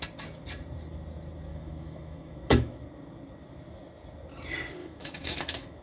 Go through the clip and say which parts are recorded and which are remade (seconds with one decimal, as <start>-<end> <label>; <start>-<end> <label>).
0.0-1.5 recorded; 1.5-2.8 remade; 2.8-4.8 recorded; 4.8-5.8 remade